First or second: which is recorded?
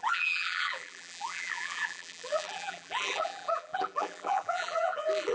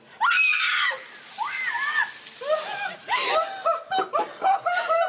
second